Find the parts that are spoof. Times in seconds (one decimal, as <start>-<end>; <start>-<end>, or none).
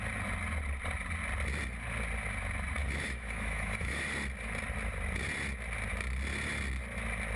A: 2.8-4.0